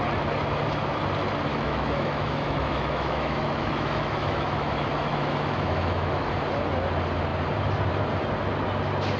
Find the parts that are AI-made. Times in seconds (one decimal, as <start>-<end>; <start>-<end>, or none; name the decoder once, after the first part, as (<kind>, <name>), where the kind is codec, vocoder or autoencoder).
1.5-6.3 (autoencoder, DAC-VAE)